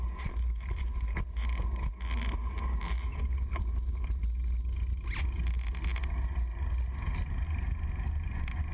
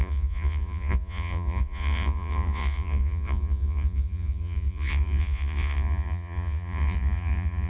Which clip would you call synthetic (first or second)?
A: second